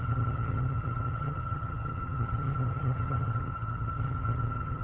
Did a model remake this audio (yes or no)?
yes